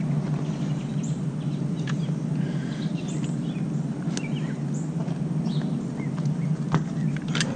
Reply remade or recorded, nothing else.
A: recorded